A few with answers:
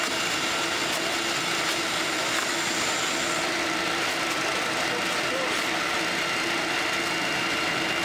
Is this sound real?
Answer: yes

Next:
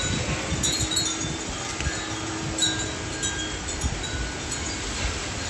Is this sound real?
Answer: yes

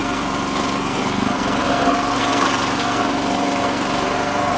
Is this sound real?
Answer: no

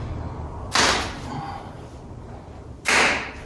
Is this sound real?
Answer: yes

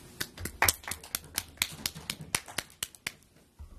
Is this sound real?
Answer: yes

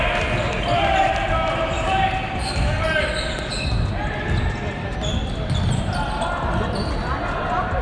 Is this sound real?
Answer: yes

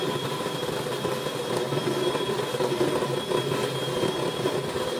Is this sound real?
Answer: yes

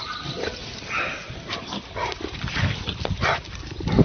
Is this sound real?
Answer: yes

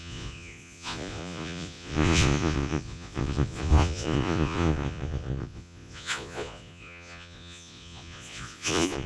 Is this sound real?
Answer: no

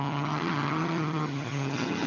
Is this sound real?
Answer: no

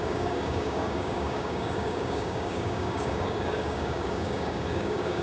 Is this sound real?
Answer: no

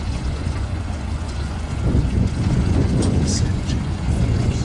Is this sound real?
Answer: no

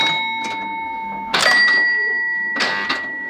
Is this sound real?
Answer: yes